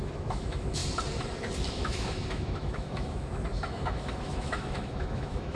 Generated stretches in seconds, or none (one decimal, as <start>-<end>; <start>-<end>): 0.0-0.8; 1.7-5.6